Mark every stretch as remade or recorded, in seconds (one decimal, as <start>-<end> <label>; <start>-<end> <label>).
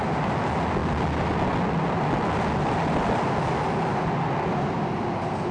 0.0-5.5 recorded